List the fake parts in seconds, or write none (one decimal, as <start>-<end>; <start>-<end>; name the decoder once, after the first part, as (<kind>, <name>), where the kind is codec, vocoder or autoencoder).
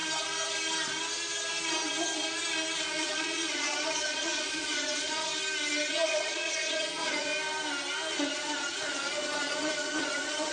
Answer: 2.9-5.3 (vocoder, Vocos); 5.9-7.3; 8.1-10.5